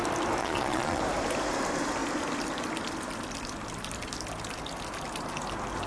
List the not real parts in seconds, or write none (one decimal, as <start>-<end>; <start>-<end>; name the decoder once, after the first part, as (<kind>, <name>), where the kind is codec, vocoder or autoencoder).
0.4-1.0 (vocoder, Vocos)